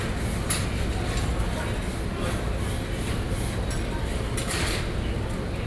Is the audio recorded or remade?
recorded